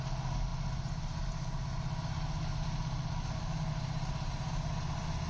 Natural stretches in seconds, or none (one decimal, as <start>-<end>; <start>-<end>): 0.0-5.3